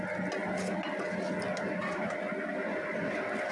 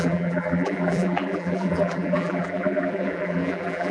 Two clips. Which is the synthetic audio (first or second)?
second